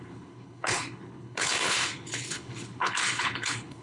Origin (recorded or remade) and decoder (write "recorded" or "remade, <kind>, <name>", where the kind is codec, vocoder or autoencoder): remade, codec, HILCodec